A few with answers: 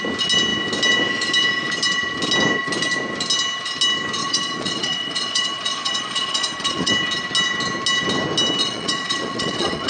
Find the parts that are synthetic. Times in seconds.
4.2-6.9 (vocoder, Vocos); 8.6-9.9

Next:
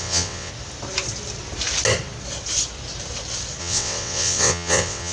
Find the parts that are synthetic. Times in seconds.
0.0-0.5 (vocoder, WaveNeXt); 3.6-5.1

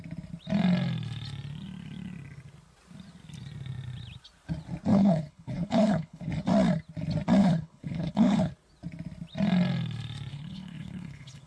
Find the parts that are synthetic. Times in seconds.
4.9-6.3 (codec, HILCodec); 7.4-8.5; 10.3-11.5

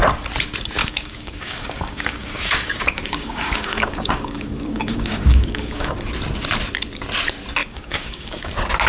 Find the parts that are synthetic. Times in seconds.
0.8-5.9 (codec, DAC); 7.6-8.5

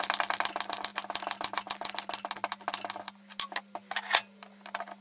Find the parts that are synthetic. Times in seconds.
none

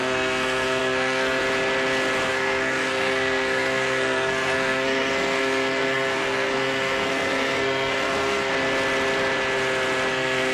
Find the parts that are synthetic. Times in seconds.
0.0-1.4 (codec, SNAC); 2.3-8.5; 10.1-10.5

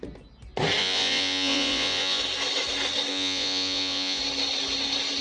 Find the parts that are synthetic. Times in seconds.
0.8-2.2 (vocoder, Vocos); 3.1-4.2